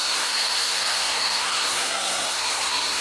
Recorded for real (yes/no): no